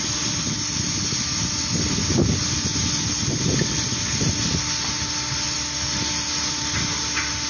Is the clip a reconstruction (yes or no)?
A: no